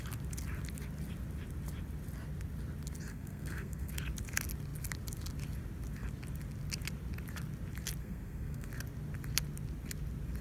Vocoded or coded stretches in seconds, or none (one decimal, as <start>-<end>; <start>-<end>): 3.1-3.9; 8.0-8.7